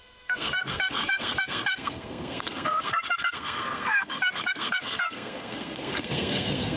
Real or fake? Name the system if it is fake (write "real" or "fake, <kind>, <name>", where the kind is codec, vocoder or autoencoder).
fake, codec, SNAC